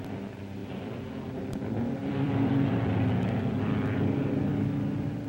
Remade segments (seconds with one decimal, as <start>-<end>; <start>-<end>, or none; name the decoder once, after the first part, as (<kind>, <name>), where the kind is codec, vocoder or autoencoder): 2.0-2.9 (vocoder, BigVGAN v2)